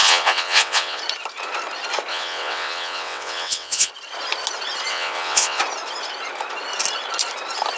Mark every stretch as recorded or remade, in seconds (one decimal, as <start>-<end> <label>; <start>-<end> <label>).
0.0-1.0 remade; 1.0-2.1 recorded; 2.1-3.9 remade; 3.9-4.9 recorded; 4.9-5.6 remade; 5.6-7.8 recorded